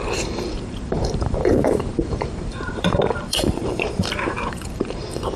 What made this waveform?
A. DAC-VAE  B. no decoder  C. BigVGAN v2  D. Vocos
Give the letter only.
C